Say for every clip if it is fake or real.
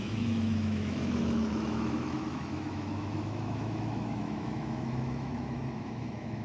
fake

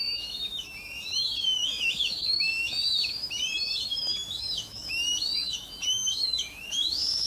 fake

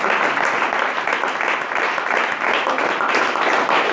real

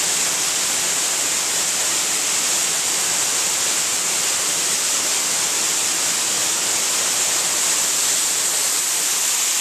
real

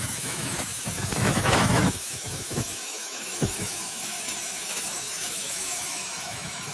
fake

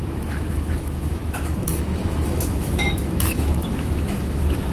fake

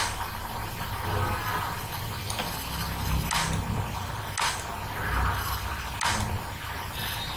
real